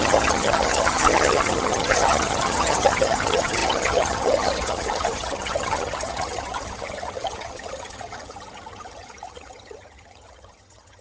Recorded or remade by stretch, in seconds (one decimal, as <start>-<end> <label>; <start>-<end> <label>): 0.0-11.0 remade